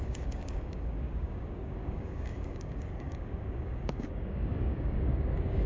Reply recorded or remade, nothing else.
remade